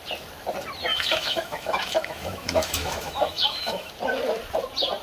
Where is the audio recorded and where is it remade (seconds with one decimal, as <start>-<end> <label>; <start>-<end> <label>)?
0.0-0.9 recorded; 0.9-3.9 remade; 3.9-5.0 recorded